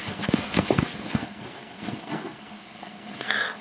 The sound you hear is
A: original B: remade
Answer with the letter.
B